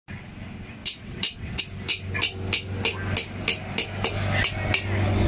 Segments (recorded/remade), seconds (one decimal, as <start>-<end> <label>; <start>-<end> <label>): 0.0-0.8 recorded; 0.8-1.6 remade; 1.6-5.3 recorded